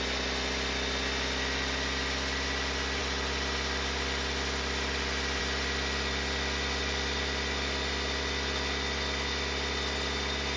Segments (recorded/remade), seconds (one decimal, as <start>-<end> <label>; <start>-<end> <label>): 0.0-10.6 recorded